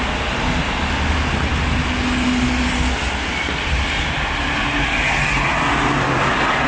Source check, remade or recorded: recorded